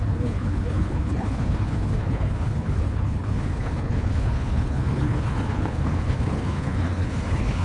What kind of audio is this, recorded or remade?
remade